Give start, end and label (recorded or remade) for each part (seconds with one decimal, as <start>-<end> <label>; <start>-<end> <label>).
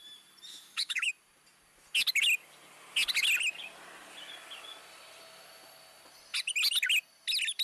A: 0.0-0.5 recorded; 0.5-1.1 remade; 1.1-7.6 recorded